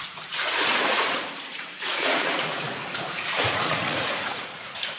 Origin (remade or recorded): remade